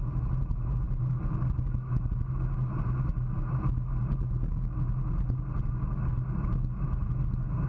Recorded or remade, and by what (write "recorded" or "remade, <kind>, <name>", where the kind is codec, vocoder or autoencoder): recorded